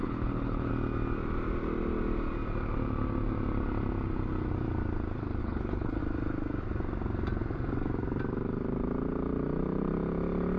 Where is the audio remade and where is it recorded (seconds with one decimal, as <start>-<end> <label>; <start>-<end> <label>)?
0.0-0.7 remade; 0.7-5.4 recorded; 5.4-6.0 remade; 6.0-10.6 recorded